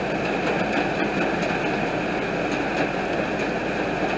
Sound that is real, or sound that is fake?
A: real